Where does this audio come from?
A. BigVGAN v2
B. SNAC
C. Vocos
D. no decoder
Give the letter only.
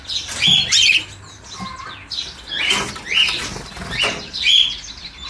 D